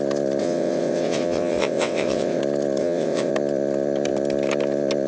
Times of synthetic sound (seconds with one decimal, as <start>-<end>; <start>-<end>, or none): 0.4-2.4; 2.8-3.3